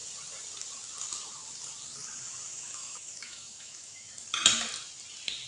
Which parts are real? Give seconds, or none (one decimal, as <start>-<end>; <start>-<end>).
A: 0.0-2.5; 4.1-5.5